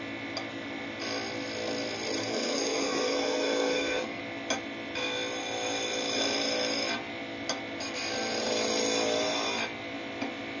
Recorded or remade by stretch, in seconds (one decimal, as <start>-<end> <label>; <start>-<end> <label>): 0.0-2.2 recorded; 2.2-4.2 remade; 4.2-10.6 recorded